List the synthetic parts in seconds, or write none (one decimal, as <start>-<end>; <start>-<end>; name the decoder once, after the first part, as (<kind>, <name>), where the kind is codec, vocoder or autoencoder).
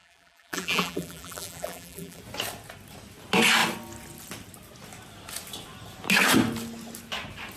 0.0-2.2 (vocoder, BigVGAN v2)